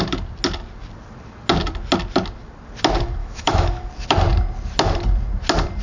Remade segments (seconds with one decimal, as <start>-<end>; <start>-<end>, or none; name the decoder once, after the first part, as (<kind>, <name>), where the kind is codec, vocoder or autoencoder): 3.2-3.9 (autoencoder, DAC-VAE)